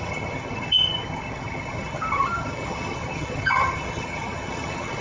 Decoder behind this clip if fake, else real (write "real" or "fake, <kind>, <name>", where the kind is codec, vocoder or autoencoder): fake, vocoder, HiFi-GAN